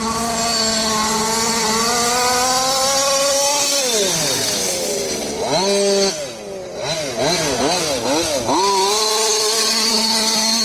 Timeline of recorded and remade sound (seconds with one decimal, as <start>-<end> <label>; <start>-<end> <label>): 0.0-10.6 recorded